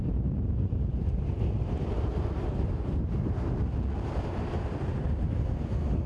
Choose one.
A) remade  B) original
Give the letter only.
B